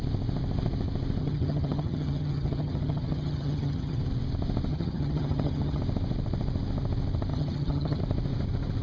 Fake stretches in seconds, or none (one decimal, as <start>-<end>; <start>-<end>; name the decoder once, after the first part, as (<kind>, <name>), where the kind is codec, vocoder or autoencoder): 1.2-4.0 (vocoder, HiFi-GAN); 4.7-5.8; 7.3-8.0